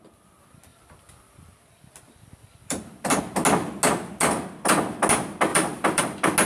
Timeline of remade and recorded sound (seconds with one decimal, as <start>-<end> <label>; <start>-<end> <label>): 0.0-0.7 recorded; 0.7-3.2 remade; 3.2-5.5 recorded; 5.5-6.0 remade; 6.0-6.5 recorded